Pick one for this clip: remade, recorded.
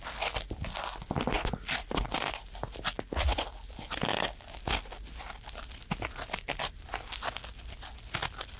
recorded